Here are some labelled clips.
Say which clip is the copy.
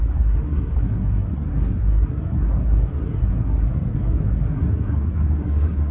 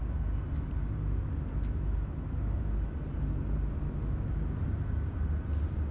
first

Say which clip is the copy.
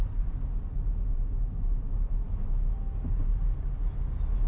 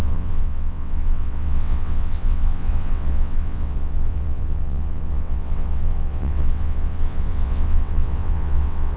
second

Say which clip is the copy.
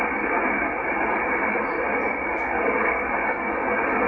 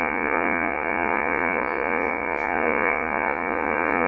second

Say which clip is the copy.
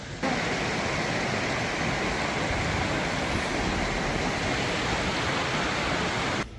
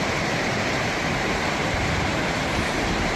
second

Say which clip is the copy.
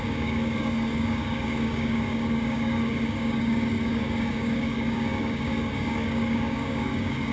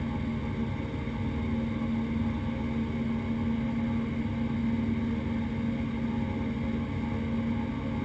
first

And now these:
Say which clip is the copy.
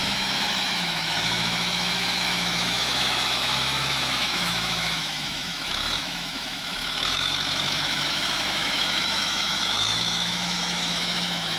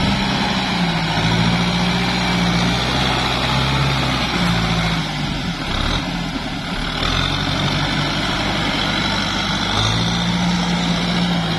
first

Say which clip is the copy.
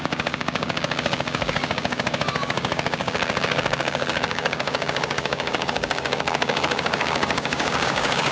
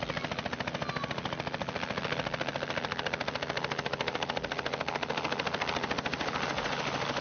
first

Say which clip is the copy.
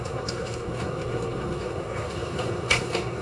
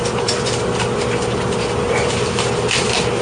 first